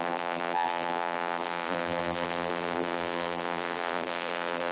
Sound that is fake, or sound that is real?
fake